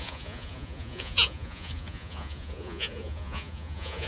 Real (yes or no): no